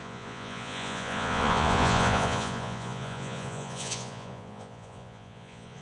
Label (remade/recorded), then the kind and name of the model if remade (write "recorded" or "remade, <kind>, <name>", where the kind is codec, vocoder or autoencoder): remade, vocoder, Vocos